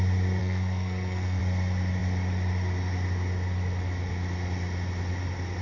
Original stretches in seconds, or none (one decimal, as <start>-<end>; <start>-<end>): 0.0-0.4; 1.4-5.6